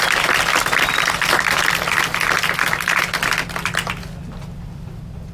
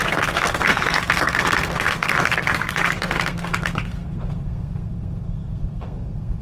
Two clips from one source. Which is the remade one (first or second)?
second